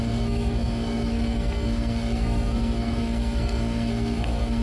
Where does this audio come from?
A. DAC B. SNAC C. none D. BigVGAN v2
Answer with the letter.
B